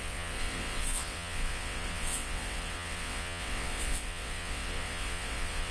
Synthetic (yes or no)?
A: yes